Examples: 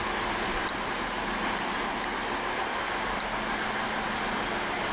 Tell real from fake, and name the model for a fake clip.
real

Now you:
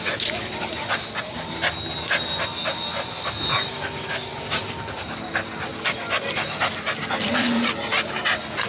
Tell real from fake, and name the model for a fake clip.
real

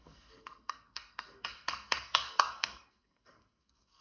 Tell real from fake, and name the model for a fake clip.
fake, codec, SNAC